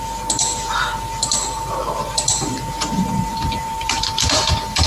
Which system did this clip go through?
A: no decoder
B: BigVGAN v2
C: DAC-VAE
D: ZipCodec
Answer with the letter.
B